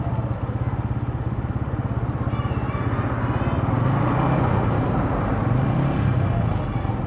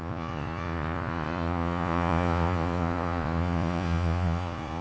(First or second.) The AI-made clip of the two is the second